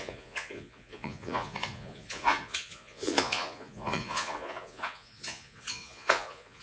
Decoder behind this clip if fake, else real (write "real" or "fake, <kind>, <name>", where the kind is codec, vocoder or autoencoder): fake, vocoder, Vocos